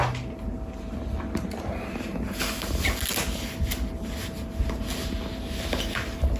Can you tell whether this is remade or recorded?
recorded